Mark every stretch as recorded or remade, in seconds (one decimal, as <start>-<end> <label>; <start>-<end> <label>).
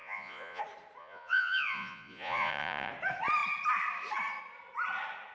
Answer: 0.0-0.6 remade; 0.6-1.0 recorded; 1.0-2.9 remade; 2.9-5.3 recorded